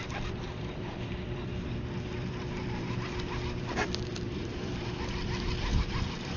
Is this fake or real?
fake